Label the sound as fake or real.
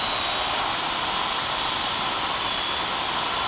real